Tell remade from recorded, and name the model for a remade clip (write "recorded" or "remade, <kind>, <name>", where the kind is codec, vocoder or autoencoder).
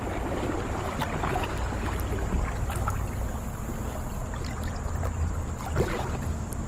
recorded